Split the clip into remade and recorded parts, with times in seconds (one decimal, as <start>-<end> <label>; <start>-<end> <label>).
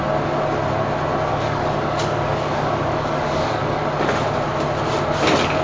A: 0.0-1.3 recorded; 1.3-3.8 remade; 3.8-5.6 recorded